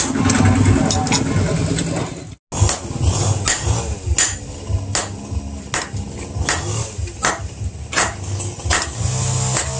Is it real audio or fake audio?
real